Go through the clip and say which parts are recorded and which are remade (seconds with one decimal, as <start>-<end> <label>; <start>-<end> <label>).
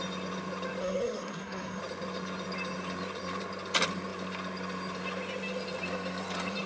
0.0-0.8 recorded; 0.8-1.8 remade; 1.8-6.7 recorded